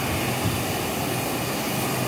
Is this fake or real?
real